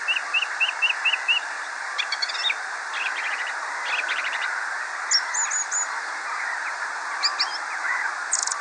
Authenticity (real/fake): real